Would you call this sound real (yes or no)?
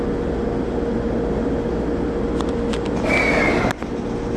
yes